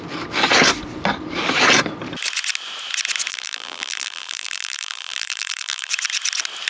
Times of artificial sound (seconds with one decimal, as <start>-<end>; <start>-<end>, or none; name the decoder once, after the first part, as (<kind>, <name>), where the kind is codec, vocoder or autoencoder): 3.3-5.9 (vocoder, BigVGAN v2)